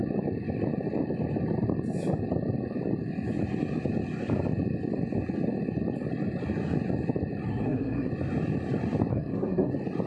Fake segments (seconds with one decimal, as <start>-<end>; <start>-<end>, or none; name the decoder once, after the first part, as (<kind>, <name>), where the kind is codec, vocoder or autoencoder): 7.5-8.1 (codec, SNAC); 9.1-9.7